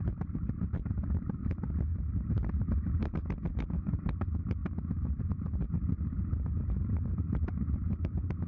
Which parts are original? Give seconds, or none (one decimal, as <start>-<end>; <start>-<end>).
none